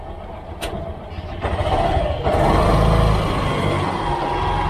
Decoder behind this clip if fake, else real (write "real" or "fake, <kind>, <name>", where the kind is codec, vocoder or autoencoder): real